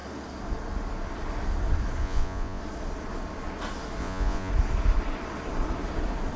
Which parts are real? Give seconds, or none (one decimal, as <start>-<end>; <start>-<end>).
0.0-2.0; 2.6-4.0; 4.5-6.4